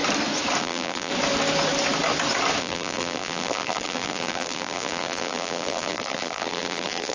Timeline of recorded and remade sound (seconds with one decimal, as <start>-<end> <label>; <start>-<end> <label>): 0.0-0.6 recorded; 0.6-1.1 remade; 1.1-2.6 recorded; 2.6-7.1 remade